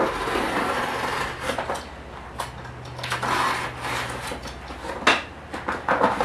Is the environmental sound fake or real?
real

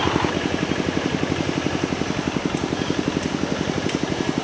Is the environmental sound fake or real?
real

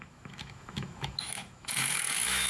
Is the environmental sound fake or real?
fake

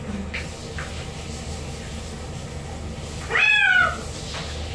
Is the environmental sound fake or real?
real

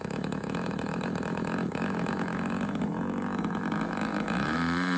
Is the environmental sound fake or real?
fake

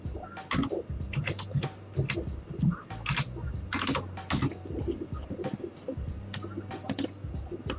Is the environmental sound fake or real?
real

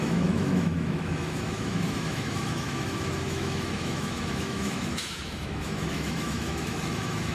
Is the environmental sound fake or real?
fake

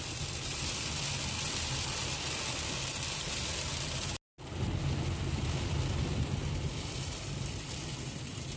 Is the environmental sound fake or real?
real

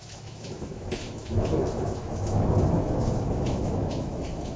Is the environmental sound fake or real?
fake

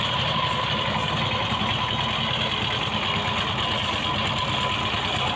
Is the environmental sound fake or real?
real